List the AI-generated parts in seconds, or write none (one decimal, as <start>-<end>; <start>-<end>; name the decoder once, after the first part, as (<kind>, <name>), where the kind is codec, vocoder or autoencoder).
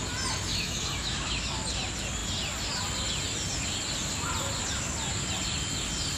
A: 0.5-1.4 (autoencoder, DAC-VAE)